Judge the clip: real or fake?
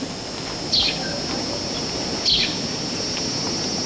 real